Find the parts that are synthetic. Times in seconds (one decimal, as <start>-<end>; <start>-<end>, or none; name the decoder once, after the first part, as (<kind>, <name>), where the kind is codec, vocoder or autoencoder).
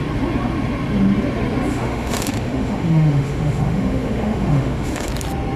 1.7-5.1 (autoencoder, DAC-VAE)